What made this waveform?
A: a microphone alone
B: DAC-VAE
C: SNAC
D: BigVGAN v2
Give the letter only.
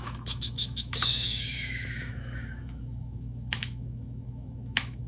B